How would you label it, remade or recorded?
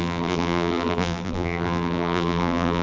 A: remade